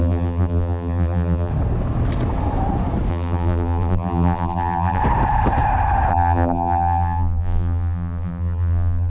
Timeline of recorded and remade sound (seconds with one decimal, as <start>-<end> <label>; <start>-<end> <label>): 0.0-1.5 remade; 1.5-3.1 recorded; 3.1-5.0 remade; 5.0-6.1 recorded; 6.1-9.1 remade